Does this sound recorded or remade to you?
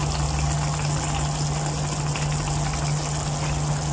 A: recorded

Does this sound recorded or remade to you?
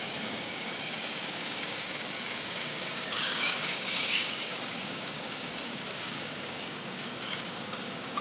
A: remade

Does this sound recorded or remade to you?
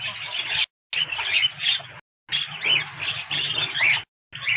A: recorded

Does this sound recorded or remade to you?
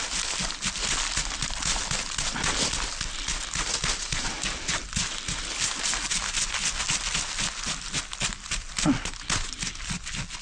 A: recorded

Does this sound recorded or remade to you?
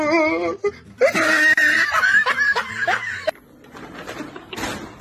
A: recorded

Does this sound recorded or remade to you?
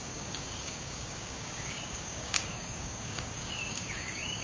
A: remade